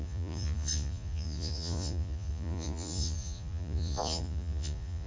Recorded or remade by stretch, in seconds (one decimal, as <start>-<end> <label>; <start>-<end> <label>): 0.0-5.1 remade